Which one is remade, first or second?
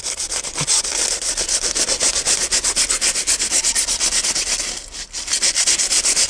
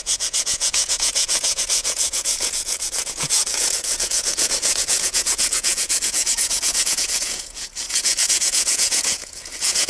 second